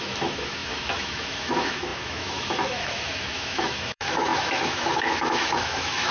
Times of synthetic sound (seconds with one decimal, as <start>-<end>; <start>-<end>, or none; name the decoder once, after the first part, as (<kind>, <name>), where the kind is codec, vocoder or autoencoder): 0.0-6.1 (autoencoder, DAC-VAE)